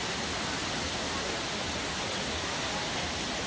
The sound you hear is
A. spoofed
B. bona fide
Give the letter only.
B